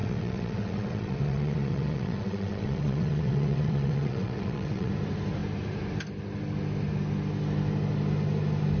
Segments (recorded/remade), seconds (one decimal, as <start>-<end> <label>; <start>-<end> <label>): 0.0-4.9 remade; 4.9-8.8 recorded